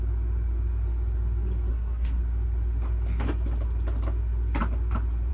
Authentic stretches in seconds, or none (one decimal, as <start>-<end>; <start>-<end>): 0.0-1.7; 2.2-5.3